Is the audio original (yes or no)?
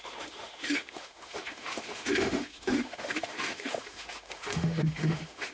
no